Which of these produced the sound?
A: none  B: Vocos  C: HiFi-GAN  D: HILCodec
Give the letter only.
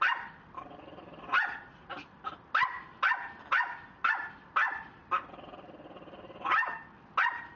A